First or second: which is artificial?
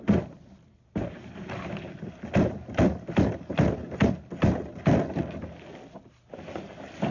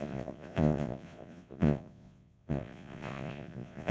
second